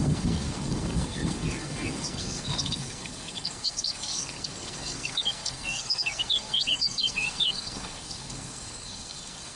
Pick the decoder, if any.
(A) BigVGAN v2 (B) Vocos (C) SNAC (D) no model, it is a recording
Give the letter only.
C